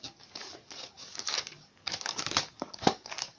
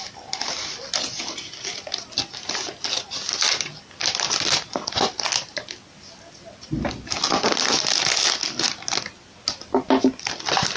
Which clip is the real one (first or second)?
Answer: second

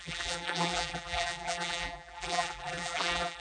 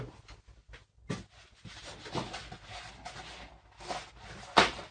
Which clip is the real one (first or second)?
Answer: second